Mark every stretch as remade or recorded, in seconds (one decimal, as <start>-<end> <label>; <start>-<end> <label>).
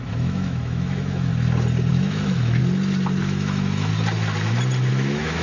0.0-1.3 remade; 1.3-1.9 recorded; 1.9-2.6 remade; 2.6-3.2 recorded; 3.2-3.9 remade; 3.9-4.9 recorded; 4.9-5.4 remade